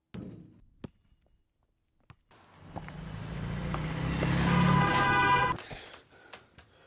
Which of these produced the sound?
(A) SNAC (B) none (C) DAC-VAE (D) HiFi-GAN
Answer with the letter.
B